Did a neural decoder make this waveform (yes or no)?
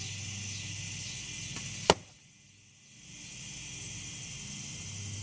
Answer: no